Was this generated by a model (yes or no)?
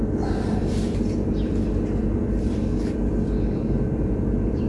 yes